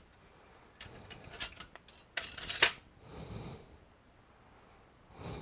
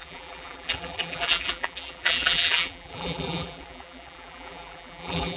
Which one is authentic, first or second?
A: first